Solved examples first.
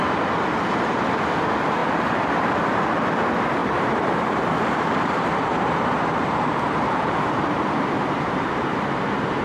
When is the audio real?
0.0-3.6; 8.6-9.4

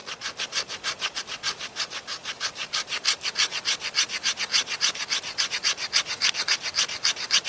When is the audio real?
0.0-2.2; 3.5-7.5

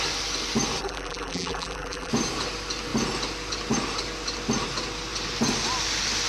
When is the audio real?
0.0-0.8; 2.1-6.3